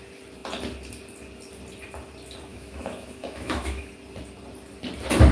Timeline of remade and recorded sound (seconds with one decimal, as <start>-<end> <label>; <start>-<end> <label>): 0.0-2.5 recorded; 2.5-3.9 remade; 3.9-5.3 recorded

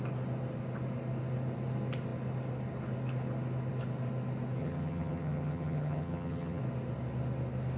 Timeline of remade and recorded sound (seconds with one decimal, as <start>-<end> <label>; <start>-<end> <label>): 0.0-4.6 recorded; 4.6-6.6 remade; 6.6-7.8 recorded

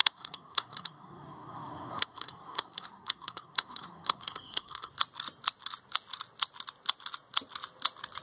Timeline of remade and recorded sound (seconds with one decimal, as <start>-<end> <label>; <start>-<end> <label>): 0.0-4.9 remade; 4.9-8.2 recorded